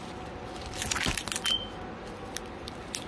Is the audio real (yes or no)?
yes